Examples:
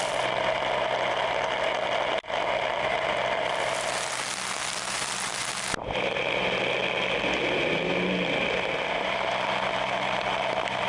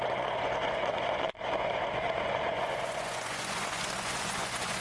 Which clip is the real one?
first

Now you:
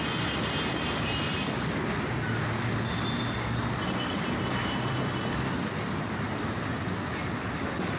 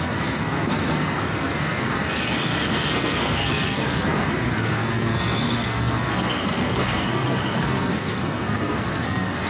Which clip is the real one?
first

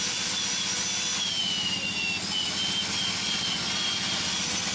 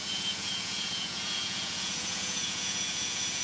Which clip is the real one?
first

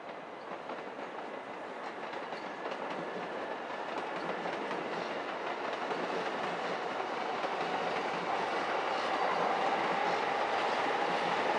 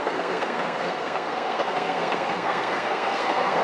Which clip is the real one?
first